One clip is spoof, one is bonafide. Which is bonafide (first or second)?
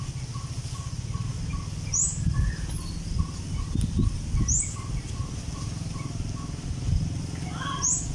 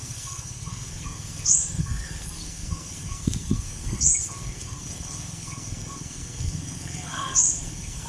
first